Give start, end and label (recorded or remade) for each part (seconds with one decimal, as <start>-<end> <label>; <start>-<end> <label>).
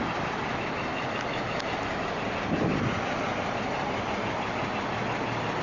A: 0.0-5.6 recorded